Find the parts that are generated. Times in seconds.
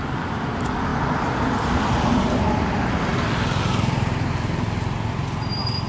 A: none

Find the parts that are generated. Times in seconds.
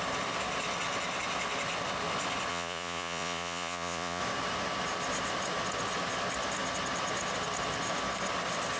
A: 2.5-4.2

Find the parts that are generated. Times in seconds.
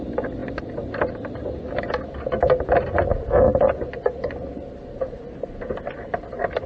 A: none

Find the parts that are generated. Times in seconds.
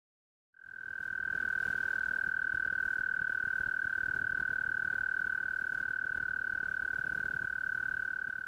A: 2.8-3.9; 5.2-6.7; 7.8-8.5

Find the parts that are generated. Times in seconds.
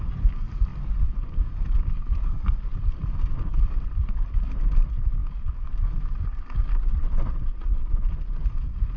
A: none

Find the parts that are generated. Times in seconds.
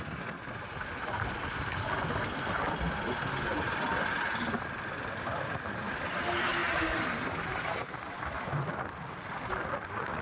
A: none